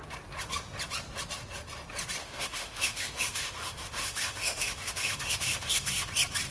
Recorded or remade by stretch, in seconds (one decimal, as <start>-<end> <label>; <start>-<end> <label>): 0.0-2.2 recorded; 2.2-6.1 remade; 6.1-6.5 recorded